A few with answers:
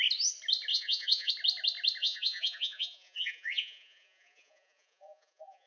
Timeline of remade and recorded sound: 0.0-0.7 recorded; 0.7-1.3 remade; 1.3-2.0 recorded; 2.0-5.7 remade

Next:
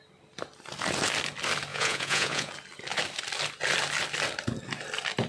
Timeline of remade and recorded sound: 0.0-1.7 recorded; 1.7-2.5 remade; 2.5-5.3 recorded

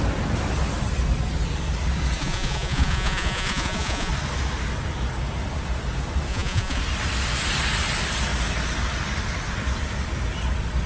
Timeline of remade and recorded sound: 0.0-2.2 recorded; 2.2-4.1 remade; 4.1-6.3 recorded; 6.3-6.8 remade; 6.8-10.9 recorded

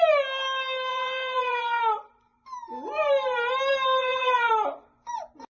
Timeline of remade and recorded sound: 0.0-0.9 recorded; 0.9-1.8 remade; 1.8-4.0 recorded; 4.0-4.5 remade; 4.5-5.5 recorded

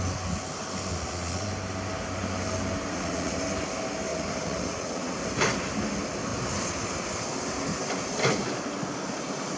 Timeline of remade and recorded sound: 0.0-0.9 recorded; 0.9-1.5 remade; 1.5-2.9 recorded; 2.9-3.4 remade; 3.4-4.1 recorded; 4.1-5.2 remade; 5.2-9.6 recorded